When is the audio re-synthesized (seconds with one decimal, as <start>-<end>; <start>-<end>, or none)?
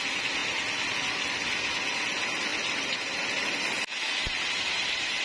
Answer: 0.4-1.2; 2.5-3.8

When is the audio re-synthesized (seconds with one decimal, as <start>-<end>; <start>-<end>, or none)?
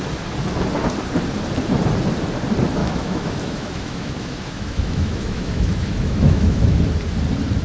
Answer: 2.8-6.8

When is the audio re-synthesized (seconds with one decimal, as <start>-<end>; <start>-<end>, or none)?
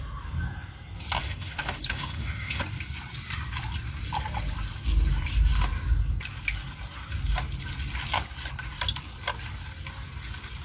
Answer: 1.2-2.6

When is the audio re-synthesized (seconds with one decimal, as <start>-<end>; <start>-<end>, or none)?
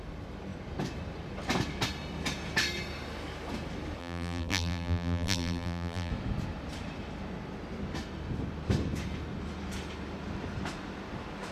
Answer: 4.0-6.1